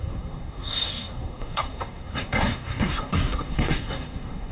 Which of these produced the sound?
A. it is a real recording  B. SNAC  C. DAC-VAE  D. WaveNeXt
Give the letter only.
B